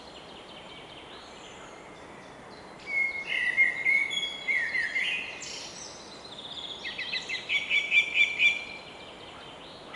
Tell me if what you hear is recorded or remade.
recorded